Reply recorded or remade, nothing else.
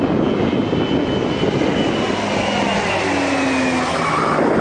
recorded